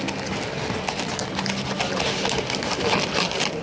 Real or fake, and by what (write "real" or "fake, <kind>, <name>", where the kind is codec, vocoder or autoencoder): real